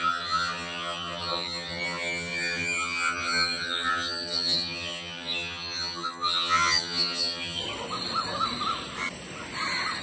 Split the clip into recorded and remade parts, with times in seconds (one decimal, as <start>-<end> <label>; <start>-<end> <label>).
0.0-7.6 remade; 7.6-10.0 recorded